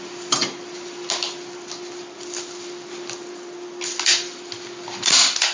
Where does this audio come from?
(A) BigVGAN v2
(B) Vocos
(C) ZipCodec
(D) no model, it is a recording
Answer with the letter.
D